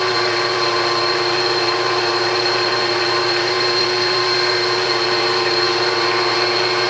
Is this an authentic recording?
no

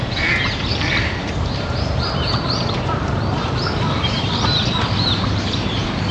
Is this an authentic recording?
yes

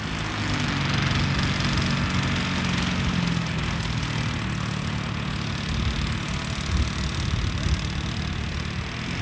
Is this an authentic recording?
yes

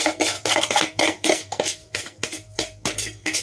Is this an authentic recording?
no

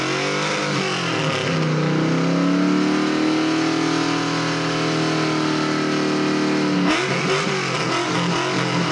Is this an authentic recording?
yes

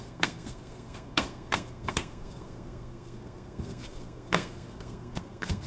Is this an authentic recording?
no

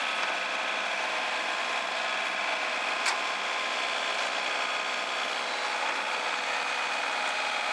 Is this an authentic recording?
yes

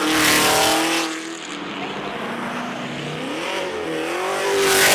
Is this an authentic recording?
yes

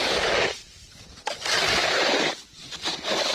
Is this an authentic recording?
no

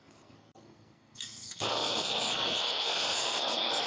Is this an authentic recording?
no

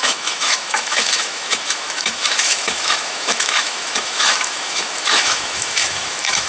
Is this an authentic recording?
no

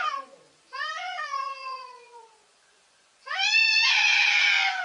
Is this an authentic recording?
no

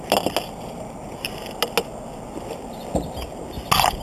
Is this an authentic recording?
yes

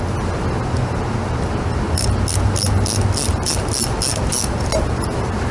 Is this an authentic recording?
yes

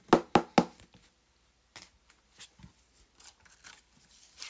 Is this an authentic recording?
yes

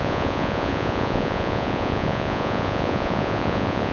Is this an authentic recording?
no